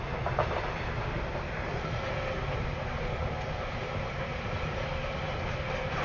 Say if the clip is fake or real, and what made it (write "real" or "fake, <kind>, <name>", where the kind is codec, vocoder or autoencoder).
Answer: real